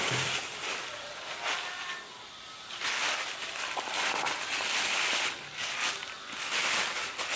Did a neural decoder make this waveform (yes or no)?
no